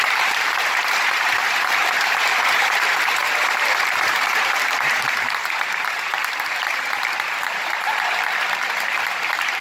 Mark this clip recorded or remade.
remade